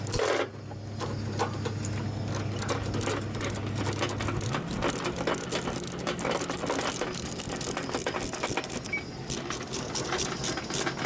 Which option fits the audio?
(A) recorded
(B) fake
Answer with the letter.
A